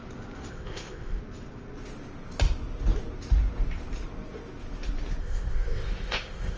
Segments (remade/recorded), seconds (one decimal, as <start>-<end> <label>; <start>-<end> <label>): 0.0-0.5 recorded; 0.5-1.2 remade; 1.2-5.2 recorded; 5.2-6.6 remade